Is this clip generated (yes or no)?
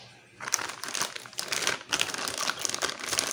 no